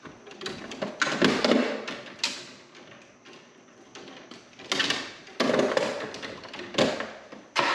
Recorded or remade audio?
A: recorded